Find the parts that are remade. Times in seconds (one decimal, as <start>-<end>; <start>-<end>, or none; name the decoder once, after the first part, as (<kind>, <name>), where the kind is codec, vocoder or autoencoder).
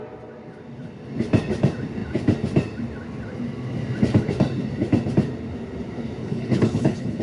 6.2-7.2 (codec, HILCodec)